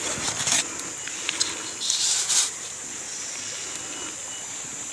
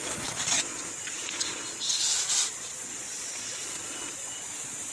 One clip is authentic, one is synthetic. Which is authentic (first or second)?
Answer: first